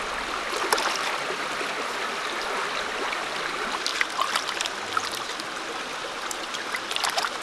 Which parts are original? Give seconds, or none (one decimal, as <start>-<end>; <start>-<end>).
0.0-7.4